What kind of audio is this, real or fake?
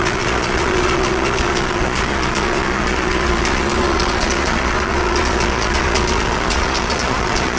fake